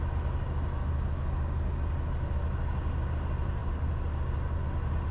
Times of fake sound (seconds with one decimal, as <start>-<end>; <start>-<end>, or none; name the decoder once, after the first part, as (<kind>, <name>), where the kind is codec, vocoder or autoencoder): none